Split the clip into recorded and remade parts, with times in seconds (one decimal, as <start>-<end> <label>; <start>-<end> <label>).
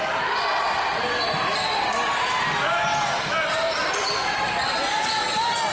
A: 0.0-5.7 recorded